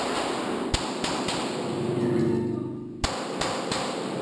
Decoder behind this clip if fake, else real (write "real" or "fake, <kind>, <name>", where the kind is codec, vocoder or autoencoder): real